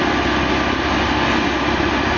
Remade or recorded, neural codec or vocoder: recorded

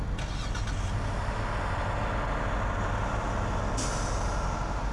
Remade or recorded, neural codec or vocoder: recorded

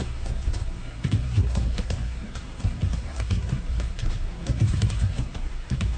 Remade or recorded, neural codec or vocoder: remade, codec, SNAC